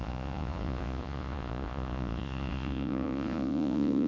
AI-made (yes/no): yes